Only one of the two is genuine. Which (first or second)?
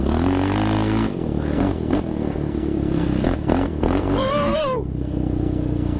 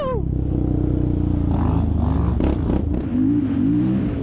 second